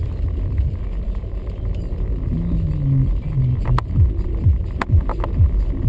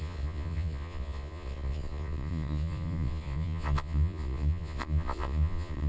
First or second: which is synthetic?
second